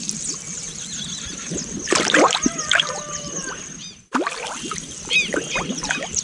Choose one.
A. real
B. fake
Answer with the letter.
A